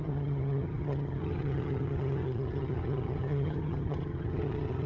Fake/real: fake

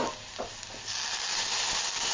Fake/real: real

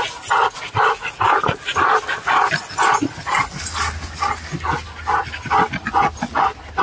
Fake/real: real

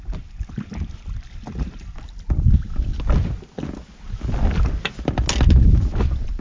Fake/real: real